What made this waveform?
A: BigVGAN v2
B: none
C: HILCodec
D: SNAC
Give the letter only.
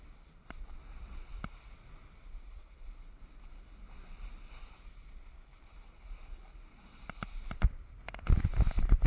A